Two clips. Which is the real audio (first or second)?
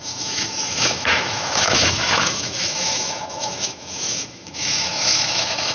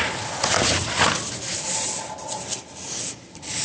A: second